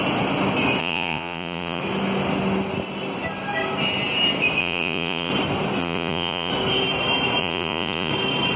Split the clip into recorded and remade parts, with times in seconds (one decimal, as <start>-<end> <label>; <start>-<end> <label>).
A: 0.0-0.8 recorded; 0.8-1.8 remade; 1.8-4.6 recorded; 4.6-5.3 remade; 5.3-5.8 recorded; 5.8-6.5 remade; 6.5-7.4 recorded; 7.4-8.1 remade; 8.1-8.6 recorded